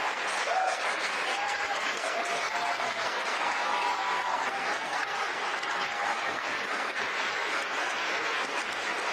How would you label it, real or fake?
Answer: fake